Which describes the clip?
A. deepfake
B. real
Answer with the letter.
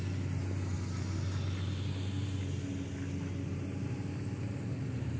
B